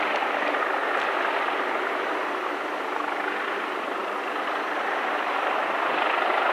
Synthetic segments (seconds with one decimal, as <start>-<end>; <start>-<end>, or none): none